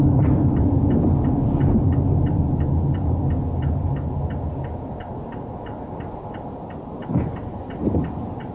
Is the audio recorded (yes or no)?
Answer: yes